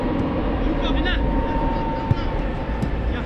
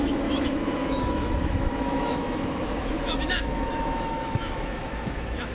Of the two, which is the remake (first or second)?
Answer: second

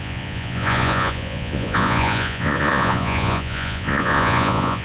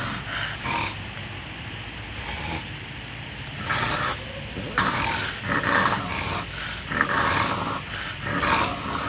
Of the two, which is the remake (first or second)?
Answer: first